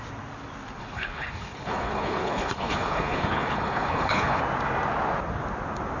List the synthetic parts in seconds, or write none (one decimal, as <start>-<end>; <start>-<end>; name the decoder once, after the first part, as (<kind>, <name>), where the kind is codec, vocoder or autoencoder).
0.8-4.4 (codec, HILCodec)